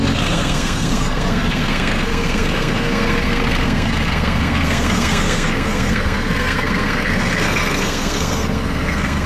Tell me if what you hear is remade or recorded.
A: remade